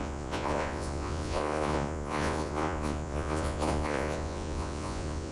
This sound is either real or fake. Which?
fake